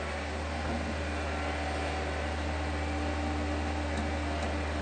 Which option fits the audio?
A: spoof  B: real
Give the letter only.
B